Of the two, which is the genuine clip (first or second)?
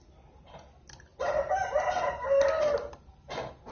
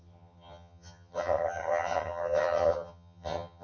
first